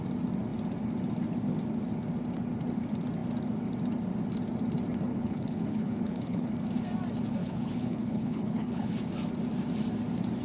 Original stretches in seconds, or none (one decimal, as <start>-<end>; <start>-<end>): 0.0-5.1; 6.5-7.4; 9.0-10.4